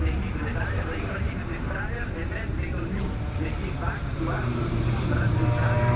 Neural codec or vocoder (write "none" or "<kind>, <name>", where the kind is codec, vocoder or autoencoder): vocoder, BigVGAN v2